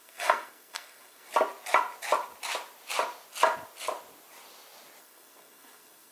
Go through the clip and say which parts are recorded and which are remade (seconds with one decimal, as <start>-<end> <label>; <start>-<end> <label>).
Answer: 0.0-1.3 remade; 1.3-5.0 recorded; 5.0-6.1 remade